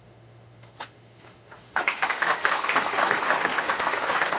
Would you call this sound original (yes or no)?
no